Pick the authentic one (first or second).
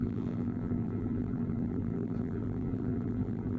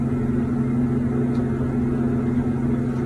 second